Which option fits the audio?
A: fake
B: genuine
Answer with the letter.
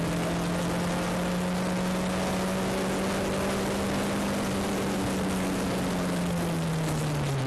B